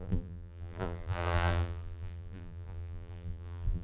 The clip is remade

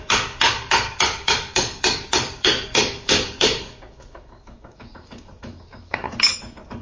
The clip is remade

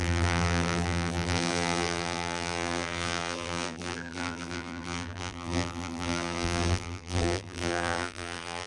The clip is remade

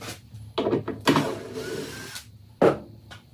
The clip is recorded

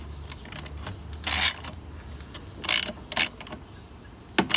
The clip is recorded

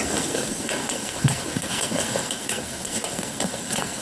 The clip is remade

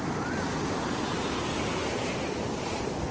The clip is recorded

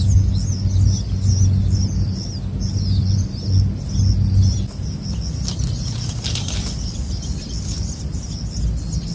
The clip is recorded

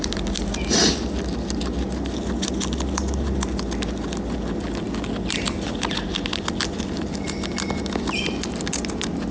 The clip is recorded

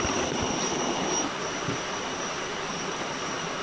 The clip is recorded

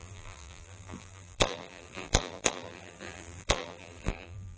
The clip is remade